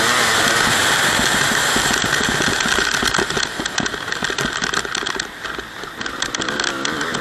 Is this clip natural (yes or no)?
yes